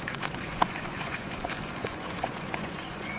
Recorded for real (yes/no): no